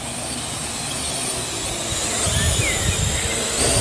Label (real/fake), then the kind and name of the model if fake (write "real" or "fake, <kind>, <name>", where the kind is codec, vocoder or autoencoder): real